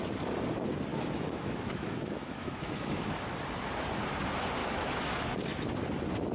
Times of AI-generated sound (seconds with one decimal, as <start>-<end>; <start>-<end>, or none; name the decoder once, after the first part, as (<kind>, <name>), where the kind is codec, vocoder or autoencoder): 0.9-3.1 (autoencoder, DAC-VAE); 4.6-5.1